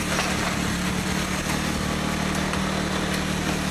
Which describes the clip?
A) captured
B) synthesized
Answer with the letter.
A